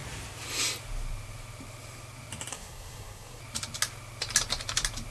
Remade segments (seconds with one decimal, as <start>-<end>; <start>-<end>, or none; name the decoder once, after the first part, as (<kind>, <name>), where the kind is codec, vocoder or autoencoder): 2.5-3.4 (codec, SNAC)